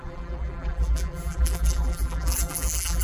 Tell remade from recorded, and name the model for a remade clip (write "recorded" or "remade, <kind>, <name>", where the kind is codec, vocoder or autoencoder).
remade, vocoder, BigVGAN v2